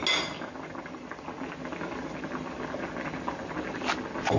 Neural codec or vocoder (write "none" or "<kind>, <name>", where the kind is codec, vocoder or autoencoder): none